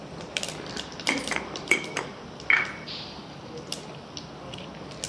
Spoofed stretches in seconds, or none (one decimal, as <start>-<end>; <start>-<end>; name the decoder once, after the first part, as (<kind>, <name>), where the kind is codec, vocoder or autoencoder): 0.0-2.0 (vocoder, BigVGAN v2)